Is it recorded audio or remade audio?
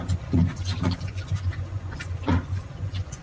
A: remade